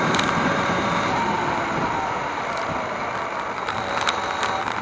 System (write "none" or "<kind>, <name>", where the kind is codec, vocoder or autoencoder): none